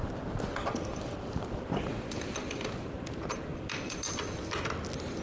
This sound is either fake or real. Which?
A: real